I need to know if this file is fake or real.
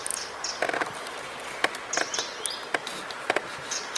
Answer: real